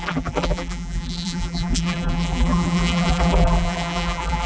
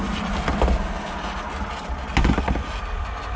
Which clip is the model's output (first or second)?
first